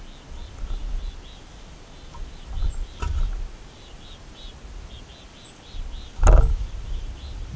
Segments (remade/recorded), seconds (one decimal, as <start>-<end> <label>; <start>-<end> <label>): 0.0-7.6 recorded